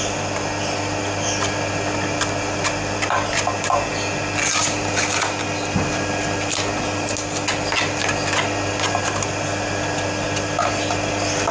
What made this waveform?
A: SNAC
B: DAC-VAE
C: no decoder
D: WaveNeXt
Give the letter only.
C